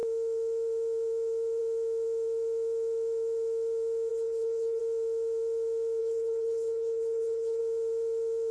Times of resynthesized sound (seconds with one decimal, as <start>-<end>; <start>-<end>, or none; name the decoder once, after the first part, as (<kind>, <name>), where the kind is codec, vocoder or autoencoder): 4.1-4.8 (codec, HILCodec); 6.0-7.6